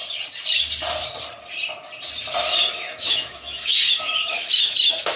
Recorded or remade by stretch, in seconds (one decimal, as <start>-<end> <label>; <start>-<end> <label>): 0.0-2.7 recorded; 2.7-5.2 remade